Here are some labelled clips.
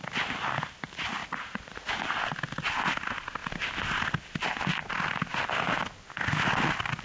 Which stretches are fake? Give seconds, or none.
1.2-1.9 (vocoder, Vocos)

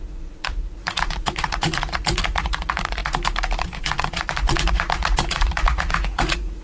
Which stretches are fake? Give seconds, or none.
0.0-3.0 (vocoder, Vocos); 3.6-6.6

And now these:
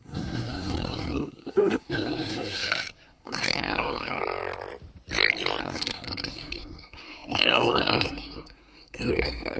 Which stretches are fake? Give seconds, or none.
0.0-4.2 (codec, SNAC); 5.6-9.6

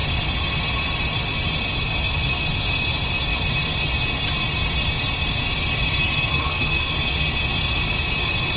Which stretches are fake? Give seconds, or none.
6.3-6.9 (codec, SNAC)

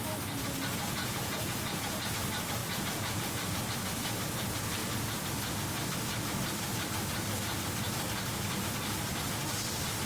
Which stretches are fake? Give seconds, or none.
1.0-2.1 (vocoder, Vocos); 2.6-3.6